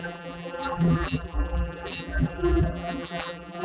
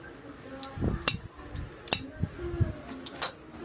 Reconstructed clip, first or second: first